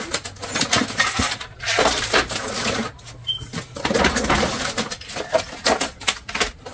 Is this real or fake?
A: real